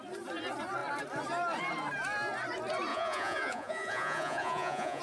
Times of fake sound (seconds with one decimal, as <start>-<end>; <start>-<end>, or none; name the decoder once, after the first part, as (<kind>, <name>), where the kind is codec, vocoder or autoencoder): 2.9-5.0 (vocoder, Vocos)